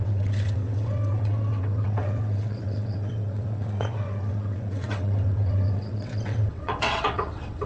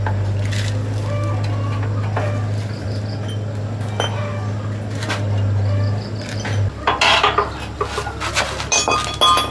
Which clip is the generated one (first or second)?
first